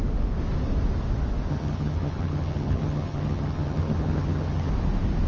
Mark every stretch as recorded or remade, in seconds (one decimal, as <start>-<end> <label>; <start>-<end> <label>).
0.0-1.5 recorded; 1.5-4.7 remade; 4.7-5.3 recorded